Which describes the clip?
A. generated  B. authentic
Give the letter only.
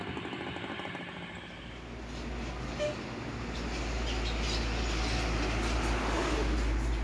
B